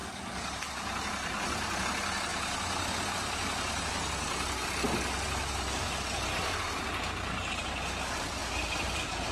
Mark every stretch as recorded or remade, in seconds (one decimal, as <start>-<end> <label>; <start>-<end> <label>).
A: 0.0-8.4 recorded; 8.4-9.3 remade